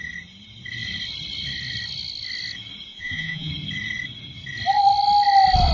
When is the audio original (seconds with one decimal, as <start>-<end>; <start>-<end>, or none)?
0.0-2.9; 3.5-5.7